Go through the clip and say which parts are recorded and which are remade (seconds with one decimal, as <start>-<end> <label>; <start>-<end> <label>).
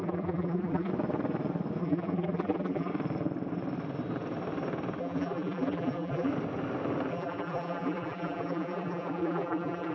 0.0-0.9 remade; 0.9-1.8 recorded; 1.8-2.9 remade; 2.9-5.0 recorded; 5.0-6.3 remade; 6.3-7.1 recorded; 7.1-9.9 remade